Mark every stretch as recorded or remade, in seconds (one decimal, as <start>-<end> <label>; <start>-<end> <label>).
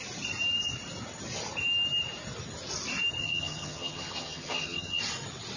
0.0-3.2 recorded; 3.2-5.0 remade; 5.0-5.6 recorded